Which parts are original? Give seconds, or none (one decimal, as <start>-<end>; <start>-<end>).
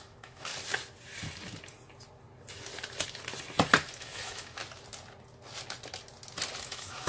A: 0.5-4.0; 4.6-6.6